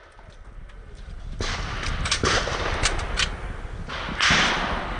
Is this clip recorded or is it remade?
recorded